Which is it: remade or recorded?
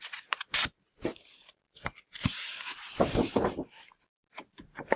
remade